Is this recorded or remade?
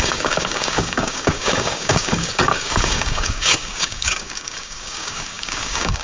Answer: remade